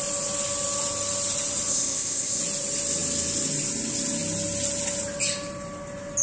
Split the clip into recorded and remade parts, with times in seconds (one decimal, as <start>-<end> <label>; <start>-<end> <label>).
0.0-1.7 recorded; 1.7-2.4 remade; 2.4-6.2 recorded